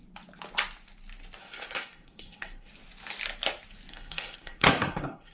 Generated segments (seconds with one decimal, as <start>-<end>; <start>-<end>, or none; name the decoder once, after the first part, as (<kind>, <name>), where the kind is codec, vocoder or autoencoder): 1.4-2.7 (codec, SNAC); 3.9-5.3